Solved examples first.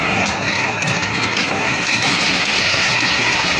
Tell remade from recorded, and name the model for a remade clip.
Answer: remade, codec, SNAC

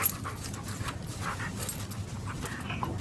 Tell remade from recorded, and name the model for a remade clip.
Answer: recorded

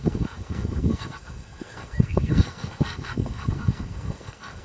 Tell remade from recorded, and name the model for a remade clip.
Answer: remade, codec, SNAC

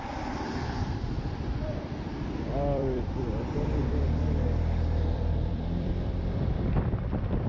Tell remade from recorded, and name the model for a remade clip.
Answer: remade, vocoder, BigVGAN v2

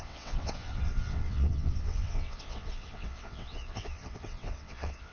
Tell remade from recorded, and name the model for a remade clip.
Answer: remade, vocoder, WaveNeXt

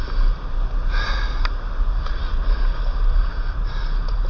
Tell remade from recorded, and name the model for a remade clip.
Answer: recorded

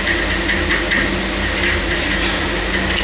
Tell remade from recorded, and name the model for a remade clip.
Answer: recorded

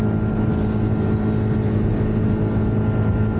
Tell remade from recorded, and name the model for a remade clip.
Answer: recorded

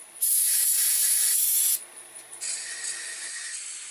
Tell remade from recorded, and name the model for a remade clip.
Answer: recorded